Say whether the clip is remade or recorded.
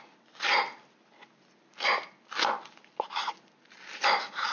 recorded